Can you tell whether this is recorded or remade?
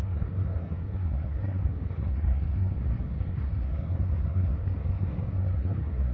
remade